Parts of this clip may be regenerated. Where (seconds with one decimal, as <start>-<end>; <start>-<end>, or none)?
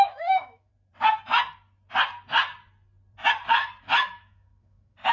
0.0-0.7; 3.8-5.1